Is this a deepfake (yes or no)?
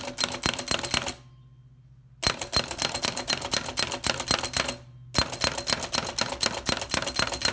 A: no